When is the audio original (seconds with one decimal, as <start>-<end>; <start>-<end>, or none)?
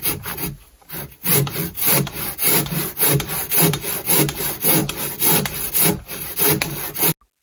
0.0-7.4